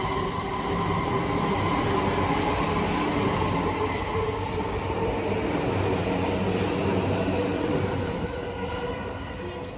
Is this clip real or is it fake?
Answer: real